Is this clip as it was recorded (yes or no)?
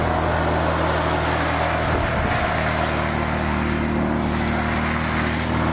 yes